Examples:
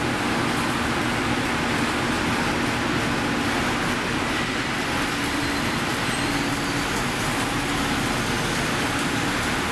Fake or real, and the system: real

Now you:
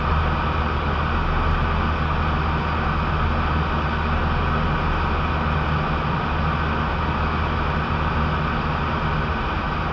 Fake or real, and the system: real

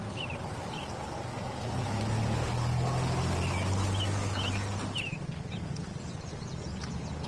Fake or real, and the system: real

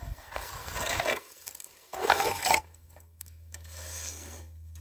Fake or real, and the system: fake, codec, SNAC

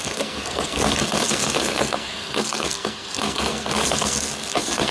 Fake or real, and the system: fake, codec, SNAC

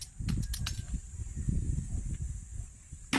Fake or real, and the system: real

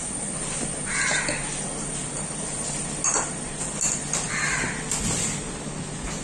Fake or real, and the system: real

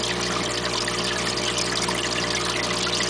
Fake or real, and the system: real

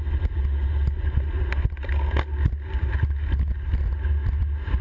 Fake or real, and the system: real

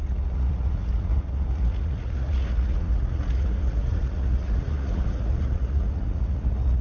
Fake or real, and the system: fake, vocoder, Vocos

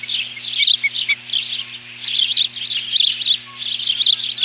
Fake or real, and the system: real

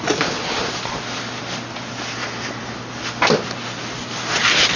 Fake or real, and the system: real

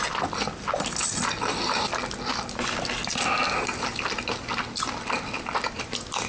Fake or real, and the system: real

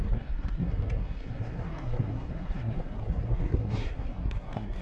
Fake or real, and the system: fake, codec, SNAC